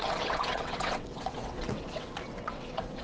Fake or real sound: fake